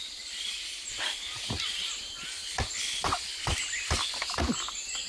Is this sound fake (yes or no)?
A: no